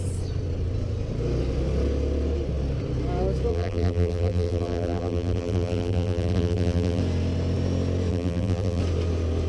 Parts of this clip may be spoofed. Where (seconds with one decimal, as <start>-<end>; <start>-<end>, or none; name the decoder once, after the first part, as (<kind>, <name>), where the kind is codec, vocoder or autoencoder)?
3.5-7.0 (vocoder, BigVGAN v2); 8.1-8.8